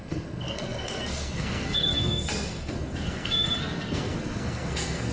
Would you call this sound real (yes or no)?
no